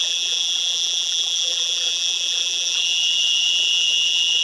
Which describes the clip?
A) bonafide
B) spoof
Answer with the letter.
B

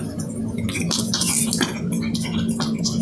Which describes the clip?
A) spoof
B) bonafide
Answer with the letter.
B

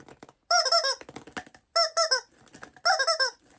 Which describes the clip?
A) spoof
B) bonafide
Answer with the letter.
B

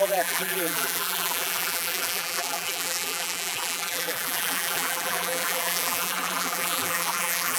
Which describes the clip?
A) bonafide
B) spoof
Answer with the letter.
B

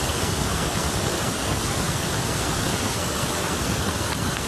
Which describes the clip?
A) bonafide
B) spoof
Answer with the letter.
B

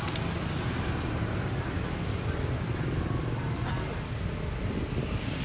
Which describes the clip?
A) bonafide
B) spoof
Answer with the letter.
A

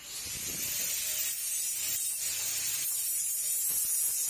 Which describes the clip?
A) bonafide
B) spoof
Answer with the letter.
A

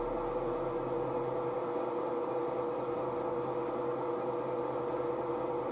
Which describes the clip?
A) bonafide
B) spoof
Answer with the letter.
A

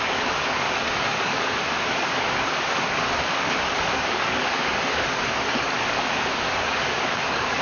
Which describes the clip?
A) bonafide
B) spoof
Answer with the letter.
B